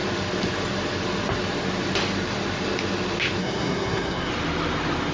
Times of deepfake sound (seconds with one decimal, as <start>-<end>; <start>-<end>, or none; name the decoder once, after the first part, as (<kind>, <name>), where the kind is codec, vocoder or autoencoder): 3.4-4.3 (codec, SNAC)